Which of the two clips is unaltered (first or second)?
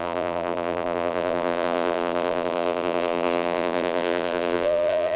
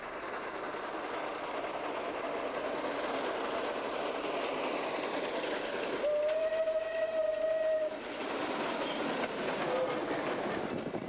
second